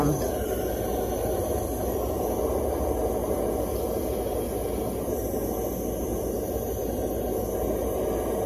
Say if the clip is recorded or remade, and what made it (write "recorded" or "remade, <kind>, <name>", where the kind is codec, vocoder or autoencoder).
recorded